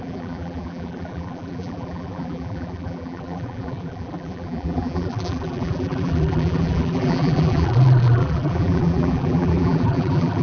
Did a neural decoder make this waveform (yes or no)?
yes